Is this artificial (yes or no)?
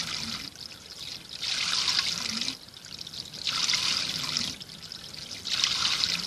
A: no